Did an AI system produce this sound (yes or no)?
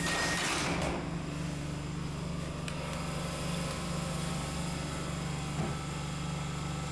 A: no